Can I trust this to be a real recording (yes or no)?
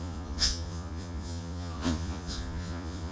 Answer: no